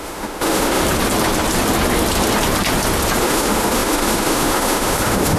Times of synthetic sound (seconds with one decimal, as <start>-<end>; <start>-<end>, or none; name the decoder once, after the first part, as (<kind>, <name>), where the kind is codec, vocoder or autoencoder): 0.0-0.8 (autoencoder, DAC-VAE); 3.2-5.4